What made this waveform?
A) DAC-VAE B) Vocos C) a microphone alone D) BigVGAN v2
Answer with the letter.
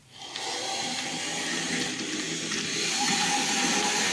C